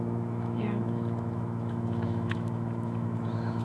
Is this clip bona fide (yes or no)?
no